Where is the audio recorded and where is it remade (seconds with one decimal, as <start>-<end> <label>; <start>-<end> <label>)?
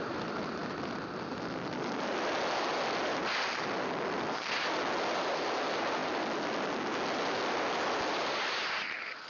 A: 0.0-9.3 recorded